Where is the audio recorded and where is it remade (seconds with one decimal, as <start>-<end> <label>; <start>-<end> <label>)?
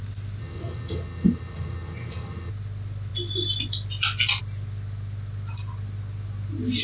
0.0-0.4 recorded; 0.4-2.5 remade; 2.5-6.8 recorded